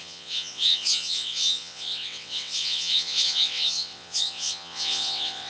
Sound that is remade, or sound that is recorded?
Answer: remade